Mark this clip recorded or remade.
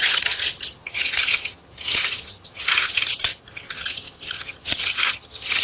remade